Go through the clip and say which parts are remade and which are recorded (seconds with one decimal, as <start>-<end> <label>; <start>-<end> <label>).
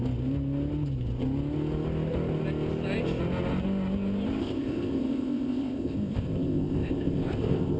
0.0-4.4 recorded; 4.4-7.8 remade